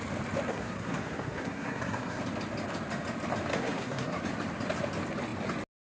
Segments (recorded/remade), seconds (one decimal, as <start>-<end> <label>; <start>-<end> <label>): 0.0-0.5 recorded; 0.5-2.2 remade; 2.2-3.5 recorded; 3.5-4.2 remade; 4.2-5.8 recorded